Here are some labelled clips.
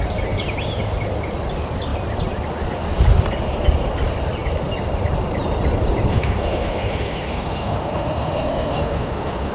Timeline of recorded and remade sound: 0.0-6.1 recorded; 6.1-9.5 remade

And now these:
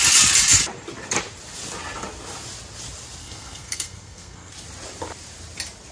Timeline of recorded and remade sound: 0.0-3.2 recorded; 3.2-4.5 remade; 4.5-5.9 recorded

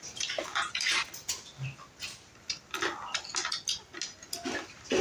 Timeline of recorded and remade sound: 0.0-5.0 recorded

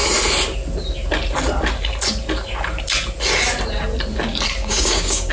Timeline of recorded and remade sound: 0.0-4.6 recorded; 4.6-5.3 remade

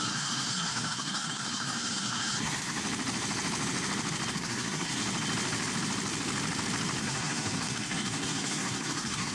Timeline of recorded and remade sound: 0.0-2.8 remade; 2.8-4.3 recorded; 4.3-5.0 remade; 5.0-7.0 recorded; 7.0-9.3 remade